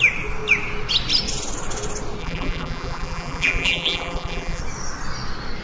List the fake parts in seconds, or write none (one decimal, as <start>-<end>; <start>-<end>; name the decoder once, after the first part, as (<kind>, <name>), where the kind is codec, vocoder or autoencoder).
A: 2.2-4.6 (vocoder, BigVGAN v2)

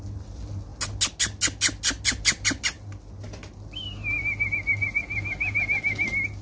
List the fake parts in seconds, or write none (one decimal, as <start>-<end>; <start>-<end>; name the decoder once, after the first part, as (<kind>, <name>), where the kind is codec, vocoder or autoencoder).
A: none

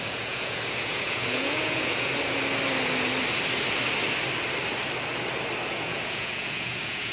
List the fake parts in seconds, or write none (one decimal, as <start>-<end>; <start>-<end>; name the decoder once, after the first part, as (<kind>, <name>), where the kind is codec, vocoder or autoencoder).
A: 0.0-2.1 (vocoder, Vocos); 5.7-7.1

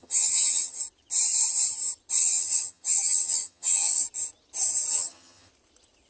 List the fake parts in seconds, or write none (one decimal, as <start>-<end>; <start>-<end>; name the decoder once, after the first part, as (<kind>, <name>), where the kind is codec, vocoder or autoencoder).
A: 0.0-0.8 (vocoder, HiFi-GAN); 2.2-4.0; 4.9-5.5

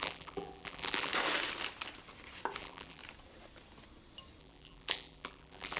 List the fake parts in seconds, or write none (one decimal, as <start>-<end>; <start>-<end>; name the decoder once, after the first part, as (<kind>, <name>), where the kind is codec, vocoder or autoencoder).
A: 0.0-1.1 (vocoder, BigVGAN v2); 2.6-3.0; 4.4-5.8

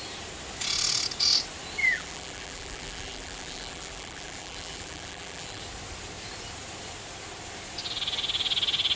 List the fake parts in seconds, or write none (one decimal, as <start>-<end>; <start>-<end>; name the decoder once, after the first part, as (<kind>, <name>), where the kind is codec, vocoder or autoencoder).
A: 1.8-5.6 (vocoder, BigVGAN v2)

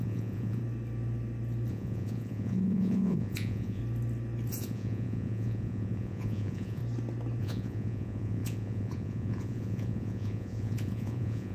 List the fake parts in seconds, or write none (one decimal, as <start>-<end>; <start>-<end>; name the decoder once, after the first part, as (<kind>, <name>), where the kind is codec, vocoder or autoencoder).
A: 0.0-0.6 (vocoder, Vocos); 1.7-3.8; 4.5-6.8; 7.4-11.5